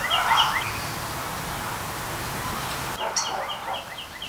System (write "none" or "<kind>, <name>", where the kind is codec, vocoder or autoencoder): none